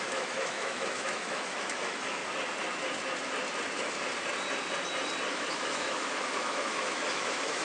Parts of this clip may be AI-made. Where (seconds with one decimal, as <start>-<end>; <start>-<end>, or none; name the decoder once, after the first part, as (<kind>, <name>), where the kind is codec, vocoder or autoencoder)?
0.0-2.2 (autoencoder, DAC-VAE); 5.3-7.6